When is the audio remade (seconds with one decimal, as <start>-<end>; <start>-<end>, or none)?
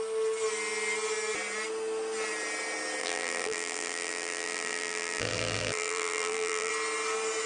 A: 3.0-6.7